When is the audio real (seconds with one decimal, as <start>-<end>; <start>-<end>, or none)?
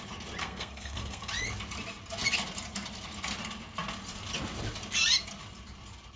0.0-0.4; 1.3-6.2